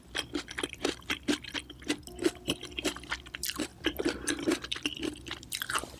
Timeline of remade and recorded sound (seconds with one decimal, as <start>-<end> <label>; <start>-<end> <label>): 0.0-6.0 recorded